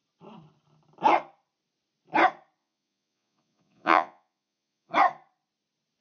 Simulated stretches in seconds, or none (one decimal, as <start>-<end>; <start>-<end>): 2.6-4.9

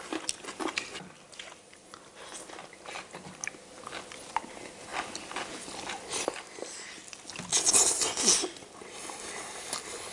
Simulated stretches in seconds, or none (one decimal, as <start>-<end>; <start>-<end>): none

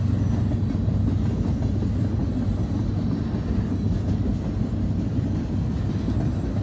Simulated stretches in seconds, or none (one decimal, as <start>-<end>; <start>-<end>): none

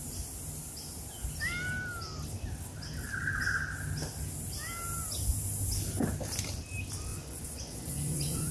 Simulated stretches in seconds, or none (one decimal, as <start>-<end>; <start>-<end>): 7.1-8.5